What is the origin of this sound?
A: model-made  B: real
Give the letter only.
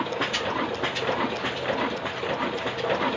B